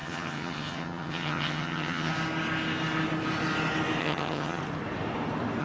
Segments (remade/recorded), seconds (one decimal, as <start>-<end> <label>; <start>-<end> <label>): 0.0-2.1 remade; 2.1-4.0 recorded; 4.0-4.6 remade; 4.6-5.6 recorded